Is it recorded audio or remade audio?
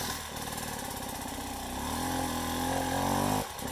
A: recorded